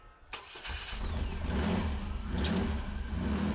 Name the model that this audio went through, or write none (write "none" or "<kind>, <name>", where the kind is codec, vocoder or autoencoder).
none